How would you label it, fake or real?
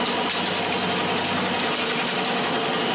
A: real